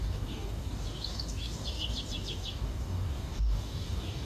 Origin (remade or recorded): remade